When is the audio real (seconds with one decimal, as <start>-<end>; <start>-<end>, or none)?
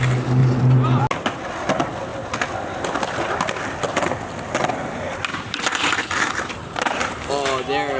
0.0-0.4; 1.0-5.3; 7.3-8.0